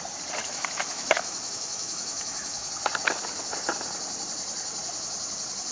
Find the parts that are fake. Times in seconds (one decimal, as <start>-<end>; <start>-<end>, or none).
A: 0.4-2.7